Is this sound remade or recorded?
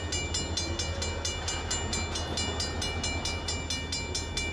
recorded